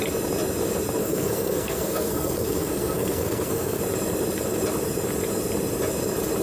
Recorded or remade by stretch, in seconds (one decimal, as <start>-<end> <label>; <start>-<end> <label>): 0.0-1.0 recorded; 1.0-3.8 remade; 3.8-6.4 recorded